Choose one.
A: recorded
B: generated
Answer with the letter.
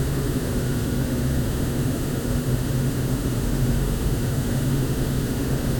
B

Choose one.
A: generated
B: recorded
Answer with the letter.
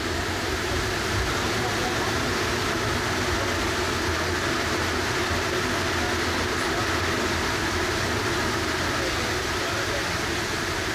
B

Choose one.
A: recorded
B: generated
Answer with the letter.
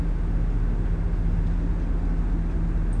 A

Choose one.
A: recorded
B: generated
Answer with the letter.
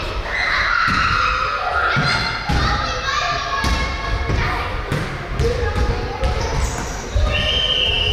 A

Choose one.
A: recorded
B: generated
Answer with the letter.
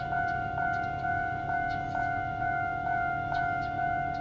B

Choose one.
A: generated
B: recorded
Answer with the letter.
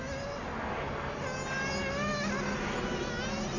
B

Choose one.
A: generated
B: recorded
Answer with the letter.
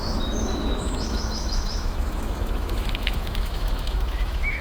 A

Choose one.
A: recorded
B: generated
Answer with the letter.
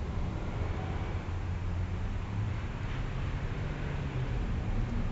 A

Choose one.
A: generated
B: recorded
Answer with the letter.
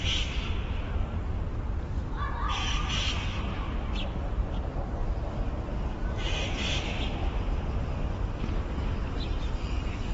B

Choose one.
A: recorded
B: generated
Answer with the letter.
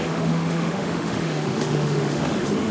B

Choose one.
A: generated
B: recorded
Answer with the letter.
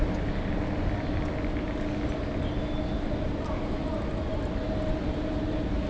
B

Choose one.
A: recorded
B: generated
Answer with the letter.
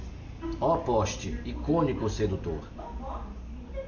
A